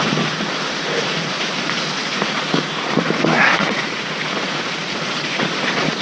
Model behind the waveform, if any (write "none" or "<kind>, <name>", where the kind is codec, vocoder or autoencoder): vocoder, Vocos